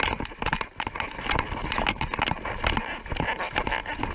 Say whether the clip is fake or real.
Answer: real